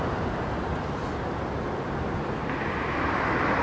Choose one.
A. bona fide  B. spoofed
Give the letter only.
A